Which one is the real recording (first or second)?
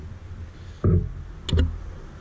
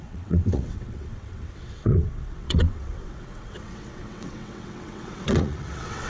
first